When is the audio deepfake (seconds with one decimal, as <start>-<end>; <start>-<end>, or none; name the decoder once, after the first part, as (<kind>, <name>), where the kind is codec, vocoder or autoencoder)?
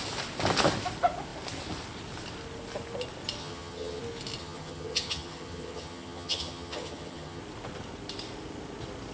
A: 3.4-4.0 (vocoder, HiFi-GAN); 4.4-7.4